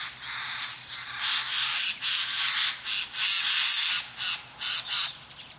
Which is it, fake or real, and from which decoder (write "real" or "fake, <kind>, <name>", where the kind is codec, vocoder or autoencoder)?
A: real